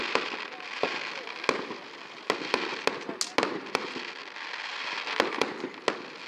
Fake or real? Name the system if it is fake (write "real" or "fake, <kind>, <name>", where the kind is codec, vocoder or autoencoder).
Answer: real